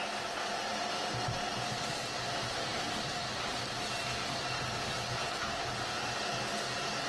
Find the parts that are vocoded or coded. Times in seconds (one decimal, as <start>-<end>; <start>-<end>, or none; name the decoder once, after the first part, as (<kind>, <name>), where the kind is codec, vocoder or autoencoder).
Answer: none